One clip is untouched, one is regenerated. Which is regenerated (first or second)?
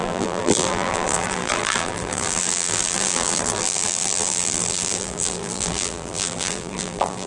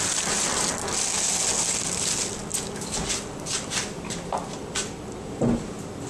first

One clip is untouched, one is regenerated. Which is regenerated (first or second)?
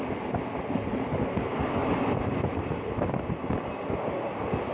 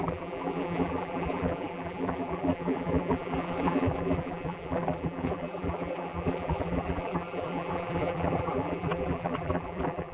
second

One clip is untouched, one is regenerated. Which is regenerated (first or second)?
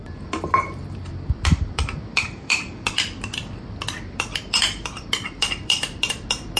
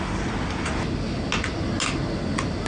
first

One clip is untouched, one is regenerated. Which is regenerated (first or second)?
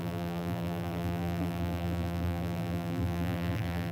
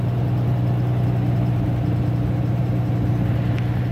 first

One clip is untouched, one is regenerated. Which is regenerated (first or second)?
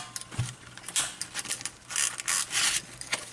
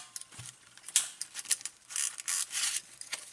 second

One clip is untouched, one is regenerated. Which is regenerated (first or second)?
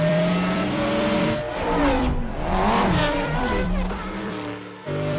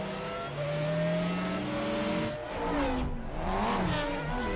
first